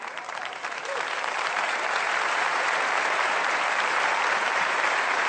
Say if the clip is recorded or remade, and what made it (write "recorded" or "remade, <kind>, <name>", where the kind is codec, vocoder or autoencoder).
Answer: remade, vocoder, BigVGAN v2